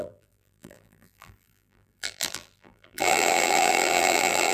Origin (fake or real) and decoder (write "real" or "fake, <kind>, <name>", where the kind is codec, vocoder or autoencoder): fake, vocoder, BigVGAN v2